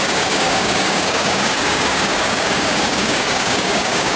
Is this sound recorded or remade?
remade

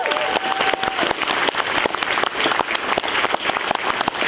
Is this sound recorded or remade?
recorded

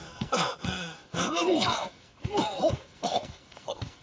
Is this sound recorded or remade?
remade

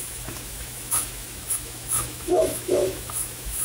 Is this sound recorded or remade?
remade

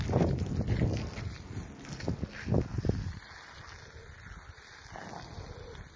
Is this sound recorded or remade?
recorded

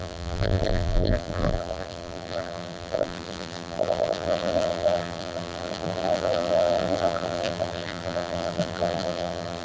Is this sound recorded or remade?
remade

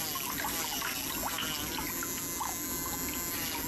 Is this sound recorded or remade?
recorded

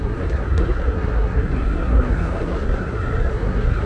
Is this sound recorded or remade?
remade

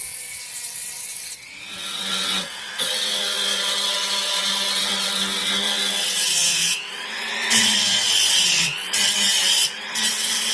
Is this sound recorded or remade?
remade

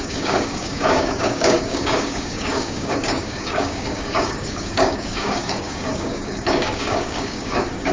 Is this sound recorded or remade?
remade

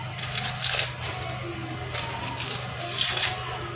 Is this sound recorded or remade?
recorded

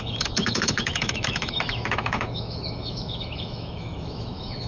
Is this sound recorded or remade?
remade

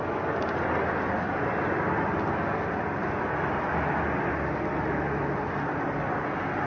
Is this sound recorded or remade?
recorded